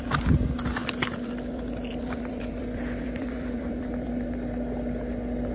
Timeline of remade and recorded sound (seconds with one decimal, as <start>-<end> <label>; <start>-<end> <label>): 0.0-0.8 recorded; 0.8-4.1 remade; 4.1-5.5 recorded